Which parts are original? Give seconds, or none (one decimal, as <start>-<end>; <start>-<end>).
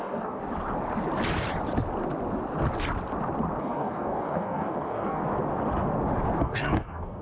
0.4-3.6; 5.2-6.4